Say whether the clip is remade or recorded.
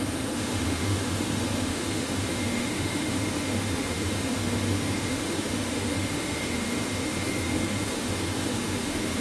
remade